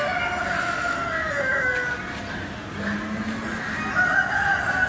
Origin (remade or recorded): recorded